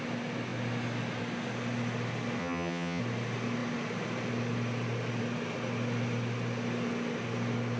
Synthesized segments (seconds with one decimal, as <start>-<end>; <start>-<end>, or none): 2.4-3.0

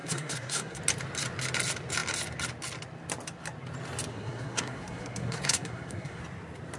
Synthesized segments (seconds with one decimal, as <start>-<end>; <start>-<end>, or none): 0.0-0.8; 4.1-6.2

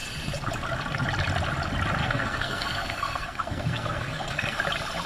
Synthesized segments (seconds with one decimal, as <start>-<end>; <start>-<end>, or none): 2.0-4.6

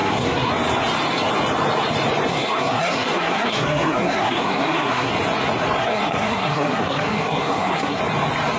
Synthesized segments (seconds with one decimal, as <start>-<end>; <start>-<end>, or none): 0.0-0.5; 2.3-5.1; 5.8-8.0